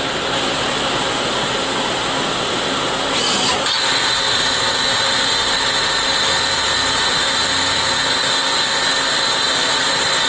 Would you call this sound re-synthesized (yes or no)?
no